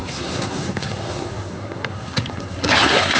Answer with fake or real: fake